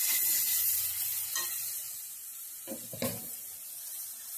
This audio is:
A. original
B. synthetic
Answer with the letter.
A